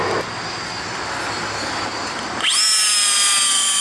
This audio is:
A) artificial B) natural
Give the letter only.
B